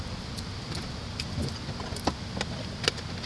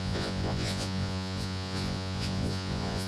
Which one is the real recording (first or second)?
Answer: first